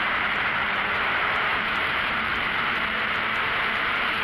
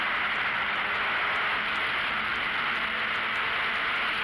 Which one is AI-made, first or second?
first